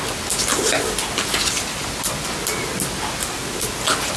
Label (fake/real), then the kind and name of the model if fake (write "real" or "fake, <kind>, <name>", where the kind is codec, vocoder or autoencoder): real